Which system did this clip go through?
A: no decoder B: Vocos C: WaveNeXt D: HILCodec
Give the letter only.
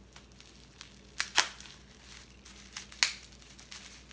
A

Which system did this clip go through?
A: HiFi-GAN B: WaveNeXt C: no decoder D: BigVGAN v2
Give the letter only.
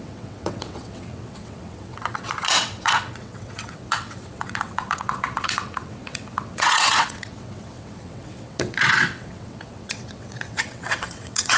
B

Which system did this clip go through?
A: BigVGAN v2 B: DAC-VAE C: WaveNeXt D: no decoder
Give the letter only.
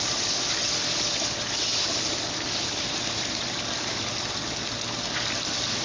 D